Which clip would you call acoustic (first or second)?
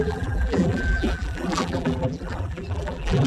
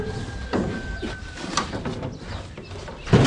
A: second